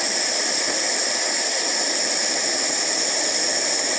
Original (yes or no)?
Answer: yes